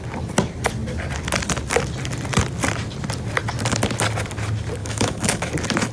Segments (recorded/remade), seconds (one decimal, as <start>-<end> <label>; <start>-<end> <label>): 0.0-4.8 recorded; 4.8-5.5 remade; 5.5-5.9 recorded